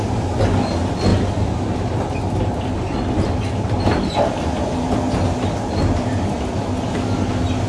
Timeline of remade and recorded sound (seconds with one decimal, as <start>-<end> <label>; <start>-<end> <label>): 0.0-7.7 recorded